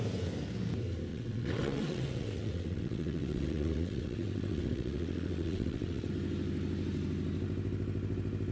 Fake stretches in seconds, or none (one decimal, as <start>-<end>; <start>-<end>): 1.1-6.1